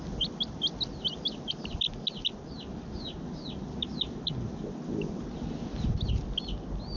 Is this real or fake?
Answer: real